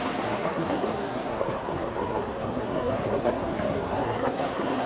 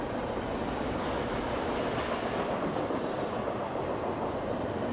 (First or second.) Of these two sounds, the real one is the second